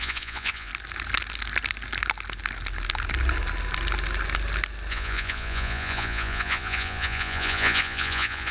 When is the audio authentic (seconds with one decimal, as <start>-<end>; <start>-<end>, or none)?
0.7-4.9